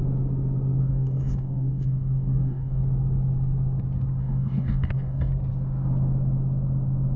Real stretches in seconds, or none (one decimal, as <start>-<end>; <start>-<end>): 0.0-0.8; 2.8-4.2; 5.3-7.2

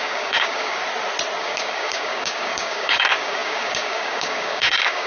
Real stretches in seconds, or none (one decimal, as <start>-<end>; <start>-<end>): 0.8-1.4

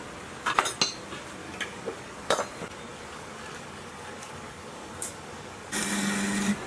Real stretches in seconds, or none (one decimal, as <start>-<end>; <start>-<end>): 0.0-1.4; 2.4-2.9; 5.8-6.7

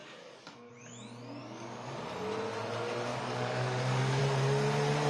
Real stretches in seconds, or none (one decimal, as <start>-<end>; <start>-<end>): 0.7-1.4; 1.9-3.1; 4.2-5.1

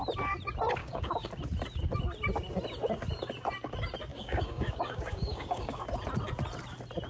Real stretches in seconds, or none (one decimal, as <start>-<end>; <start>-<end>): 0.0-0.8; 1.3-4.1; 5.8-7.1

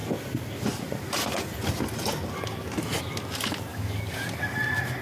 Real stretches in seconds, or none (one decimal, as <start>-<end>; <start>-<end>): 0.0-3.7; 4.2-5.0

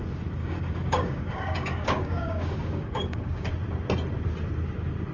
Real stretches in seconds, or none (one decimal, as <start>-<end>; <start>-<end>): 0.0-0.4; 3.5-5.1

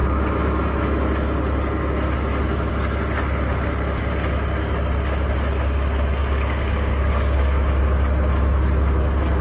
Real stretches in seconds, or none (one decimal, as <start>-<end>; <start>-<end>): 0.0-6.2; 7.8-9.4